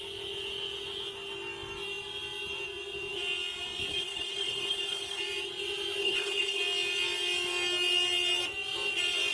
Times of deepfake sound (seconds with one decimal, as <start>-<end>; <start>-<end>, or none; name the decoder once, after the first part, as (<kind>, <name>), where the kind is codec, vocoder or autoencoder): 3.9-5.2 (codec, HILCodec); 6.0-6.6

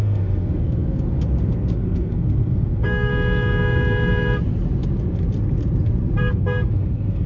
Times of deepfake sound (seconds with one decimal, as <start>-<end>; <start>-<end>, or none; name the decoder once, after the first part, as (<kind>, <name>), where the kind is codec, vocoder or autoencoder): 0.0-3.1 (codec, SNAC); 6.2-7.3